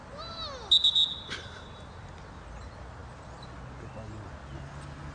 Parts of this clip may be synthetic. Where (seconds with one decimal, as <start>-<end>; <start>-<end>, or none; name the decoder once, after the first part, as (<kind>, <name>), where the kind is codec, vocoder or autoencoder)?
none